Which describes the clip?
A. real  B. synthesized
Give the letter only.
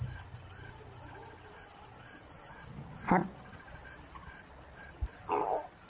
A